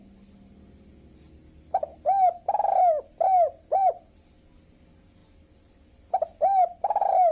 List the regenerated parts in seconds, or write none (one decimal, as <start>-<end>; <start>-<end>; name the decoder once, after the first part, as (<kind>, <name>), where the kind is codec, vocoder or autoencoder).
none